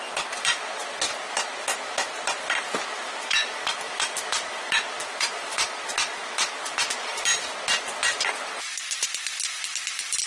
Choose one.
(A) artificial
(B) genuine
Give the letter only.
B